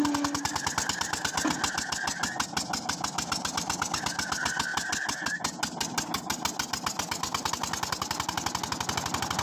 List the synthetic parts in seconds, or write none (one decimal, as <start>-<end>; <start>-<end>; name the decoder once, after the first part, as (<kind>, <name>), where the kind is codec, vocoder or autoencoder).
none